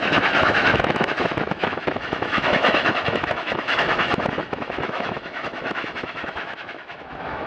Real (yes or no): no